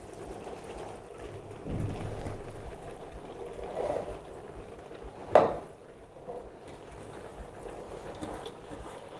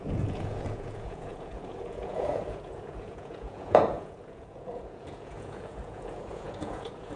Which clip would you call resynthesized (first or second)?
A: second